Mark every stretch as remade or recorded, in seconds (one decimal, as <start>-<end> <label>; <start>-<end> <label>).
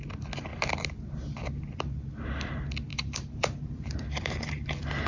0.0-2.9 recorded; 2.9-4.6 remade; 4.6-5.1 recorded